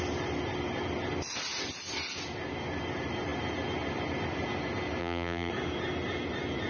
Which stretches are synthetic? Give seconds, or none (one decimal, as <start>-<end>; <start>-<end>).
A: 5.0-5.5